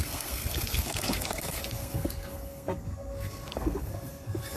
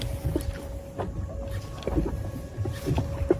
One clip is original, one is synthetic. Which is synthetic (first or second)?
first